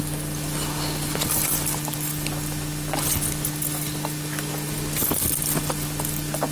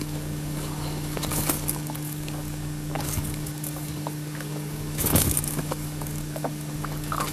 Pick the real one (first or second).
first